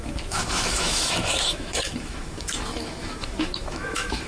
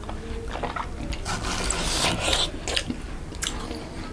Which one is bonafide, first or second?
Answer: second